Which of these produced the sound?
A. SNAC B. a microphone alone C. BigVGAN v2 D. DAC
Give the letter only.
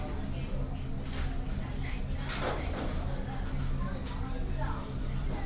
B